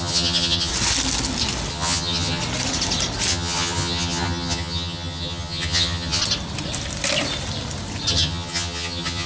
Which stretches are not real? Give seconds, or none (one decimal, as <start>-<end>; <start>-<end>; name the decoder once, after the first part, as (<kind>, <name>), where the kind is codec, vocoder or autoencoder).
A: 0.0-0.7 (vocoder, HiFi-GAN); 1.7-2.4; 3.3-6.2; 8.1-9.3